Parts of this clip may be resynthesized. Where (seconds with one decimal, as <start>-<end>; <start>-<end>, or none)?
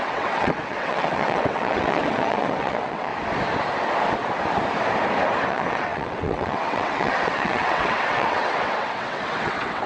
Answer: 0.0-3.1; 5.5-9.9